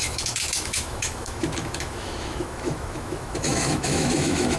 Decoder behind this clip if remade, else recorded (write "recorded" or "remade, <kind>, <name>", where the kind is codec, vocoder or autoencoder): remade, autoencoder, DAC-VAE